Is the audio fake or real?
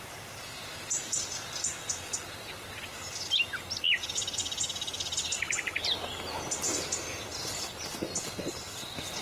real